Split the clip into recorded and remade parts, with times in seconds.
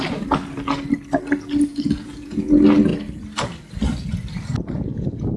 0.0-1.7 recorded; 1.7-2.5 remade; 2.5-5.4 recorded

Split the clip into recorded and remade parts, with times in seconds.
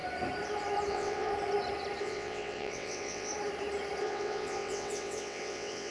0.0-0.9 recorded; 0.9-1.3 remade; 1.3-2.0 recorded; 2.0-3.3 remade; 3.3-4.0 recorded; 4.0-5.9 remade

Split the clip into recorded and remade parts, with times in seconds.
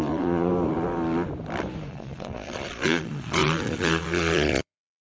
0.0-0.5 remade; 0.5-1.9 recorded; 1.9-5.0 remade